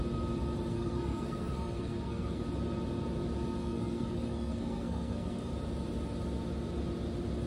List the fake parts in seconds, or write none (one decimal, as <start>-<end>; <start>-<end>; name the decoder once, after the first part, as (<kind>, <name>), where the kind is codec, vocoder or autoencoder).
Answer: 0.7-2.4 (codec, SNAC); 3.6-5.5